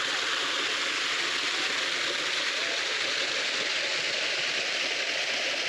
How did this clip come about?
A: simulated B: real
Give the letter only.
B